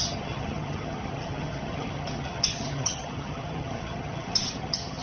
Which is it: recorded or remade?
remade